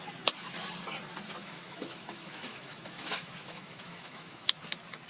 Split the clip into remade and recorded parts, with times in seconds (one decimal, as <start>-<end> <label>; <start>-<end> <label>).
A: 0.0-1.4 recorded; 1.4-4.5 remade; 4.5-5.1 recorded